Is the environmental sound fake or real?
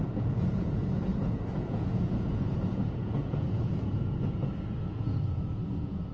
fake